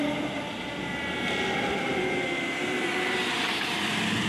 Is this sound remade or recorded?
remade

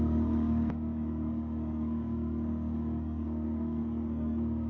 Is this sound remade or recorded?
remade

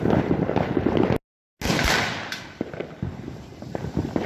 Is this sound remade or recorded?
recorded